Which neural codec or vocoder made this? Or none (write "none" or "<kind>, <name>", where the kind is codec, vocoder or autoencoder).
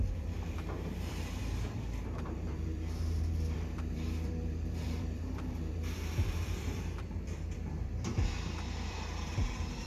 vocoder, BigVGAN v2